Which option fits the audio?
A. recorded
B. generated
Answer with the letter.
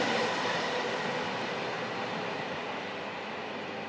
B